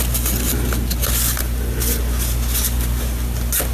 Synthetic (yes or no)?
no